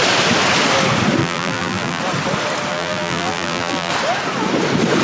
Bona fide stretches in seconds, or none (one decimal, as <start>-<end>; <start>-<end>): 0.0-1.2; 2.0-2.7; 3.9-5.0